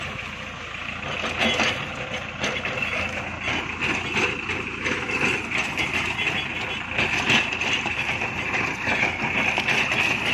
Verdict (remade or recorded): recorded